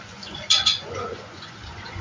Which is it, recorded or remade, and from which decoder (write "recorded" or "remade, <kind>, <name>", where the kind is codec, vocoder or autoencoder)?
remade, vocoder, Vocos